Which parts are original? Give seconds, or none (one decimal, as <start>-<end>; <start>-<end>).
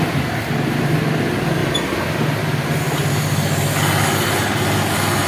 0.0-5.3